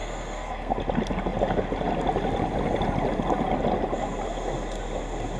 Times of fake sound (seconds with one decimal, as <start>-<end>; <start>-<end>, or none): 0.0-0.7